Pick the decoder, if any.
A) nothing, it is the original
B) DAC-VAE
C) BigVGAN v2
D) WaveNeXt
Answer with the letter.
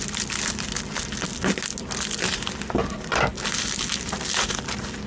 A